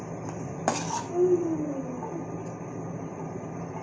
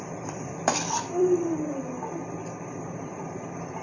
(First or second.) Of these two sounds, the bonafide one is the first